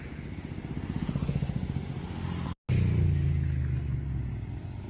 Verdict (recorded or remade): recorded